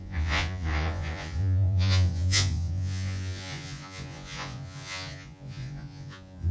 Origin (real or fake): fake